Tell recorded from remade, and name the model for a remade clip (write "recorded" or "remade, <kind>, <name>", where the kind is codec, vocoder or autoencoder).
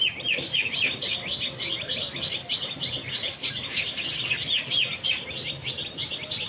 recorded